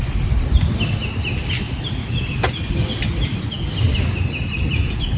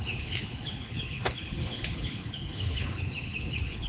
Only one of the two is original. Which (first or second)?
first